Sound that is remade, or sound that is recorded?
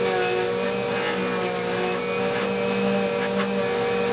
recorded